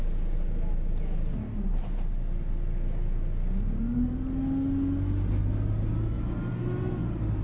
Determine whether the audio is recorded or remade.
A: recorded